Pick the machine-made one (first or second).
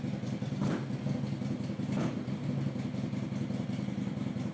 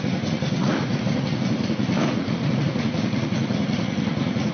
second